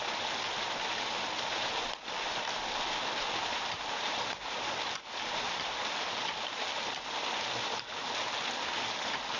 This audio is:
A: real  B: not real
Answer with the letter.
A